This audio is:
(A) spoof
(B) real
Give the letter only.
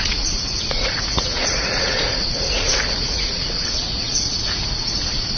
A